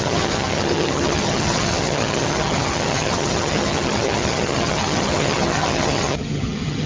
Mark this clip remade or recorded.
remade